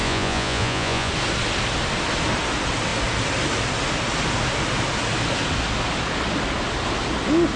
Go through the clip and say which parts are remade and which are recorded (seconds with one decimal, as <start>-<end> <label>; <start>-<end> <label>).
0.0-1.1 remade; 1.1-7.6 recorded